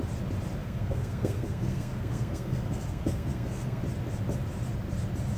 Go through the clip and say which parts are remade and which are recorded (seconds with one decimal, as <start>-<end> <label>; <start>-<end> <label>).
0.0-0.6 recorded; 0.6-3.8 remade; 3.8-5.4 recorded